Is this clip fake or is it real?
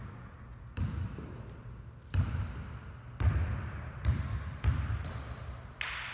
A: real